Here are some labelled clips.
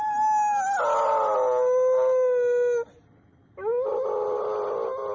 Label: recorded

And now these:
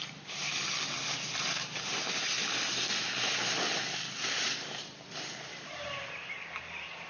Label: recorded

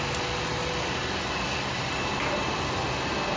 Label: recorded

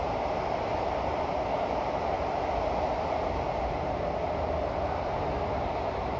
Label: recorded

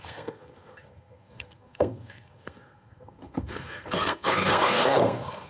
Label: remade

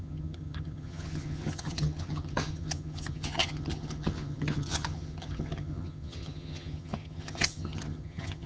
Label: remade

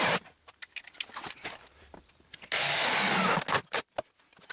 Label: recorded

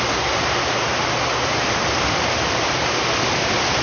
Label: recorded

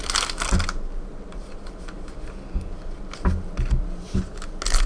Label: recorded